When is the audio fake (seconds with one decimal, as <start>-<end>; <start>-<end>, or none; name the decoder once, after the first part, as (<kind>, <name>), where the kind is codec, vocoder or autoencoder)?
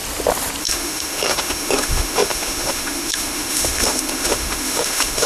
0.6-5.3 (autoencoder, DAC-VAE)